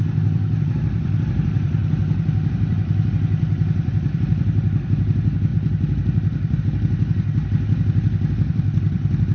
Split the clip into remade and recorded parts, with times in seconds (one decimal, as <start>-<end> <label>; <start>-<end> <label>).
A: 0.0-9.3 remade